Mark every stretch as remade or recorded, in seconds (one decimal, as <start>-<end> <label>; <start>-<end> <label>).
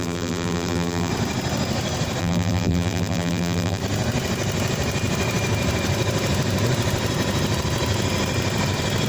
0.0-1.1 remade; 1.1-2.2 recorded; 2.2-3.8 remade; 3.8-9.1 recorded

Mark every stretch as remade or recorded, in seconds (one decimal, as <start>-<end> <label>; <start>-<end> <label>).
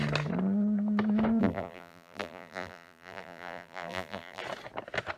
0.0-1.4 recorded; 1.4-4.4 remade; 4.4-5.2 recorded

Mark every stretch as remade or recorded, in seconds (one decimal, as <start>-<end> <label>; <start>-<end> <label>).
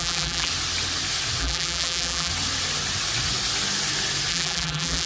0.0-0.5 remade; 0.5-1.4 recorded; 1.4-2.3 remade; 2.3-4.3 recorded; 4.3-5.1 remade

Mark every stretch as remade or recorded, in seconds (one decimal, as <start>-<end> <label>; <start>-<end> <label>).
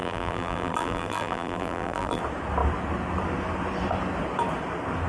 0.0-2.2 remade; 2.2-5.1 recorded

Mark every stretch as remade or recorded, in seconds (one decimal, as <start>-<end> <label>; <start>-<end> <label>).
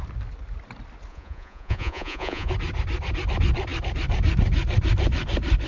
0.0-1.1 recorded; 1.1-2.5 remade; 2.5-5.7 recorded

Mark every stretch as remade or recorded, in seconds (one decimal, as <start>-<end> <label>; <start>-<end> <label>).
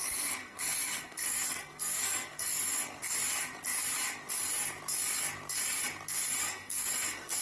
0.0-3.2 remade; 3.2-6.4 recorded; 6.4-7.4 remade